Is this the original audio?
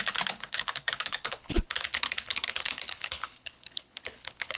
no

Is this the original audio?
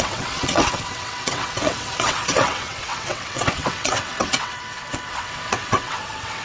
no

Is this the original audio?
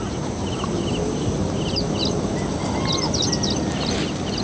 yes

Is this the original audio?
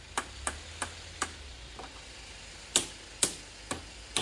yes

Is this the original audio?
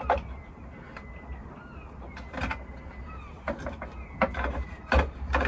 yes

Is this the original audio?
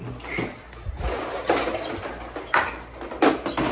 yes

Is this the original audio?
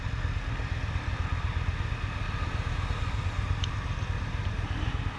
yes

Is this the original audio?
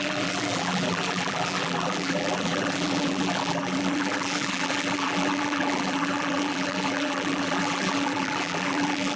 no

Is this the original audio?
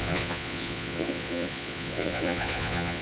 no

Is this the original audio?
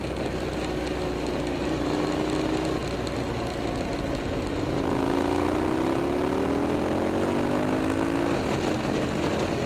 yes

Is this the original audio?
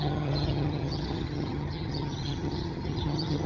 no